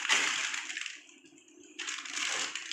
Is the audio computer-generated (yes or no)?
no